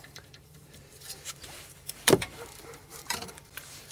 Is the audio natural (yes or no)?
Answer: no